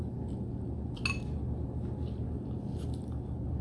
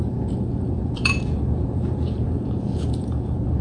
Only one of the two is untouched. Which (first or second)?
first